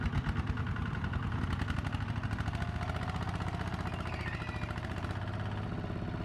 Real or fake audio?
real